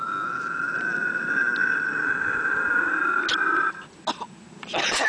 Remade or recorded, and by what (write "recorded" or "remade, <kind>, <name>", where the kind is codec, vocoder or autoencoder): recorded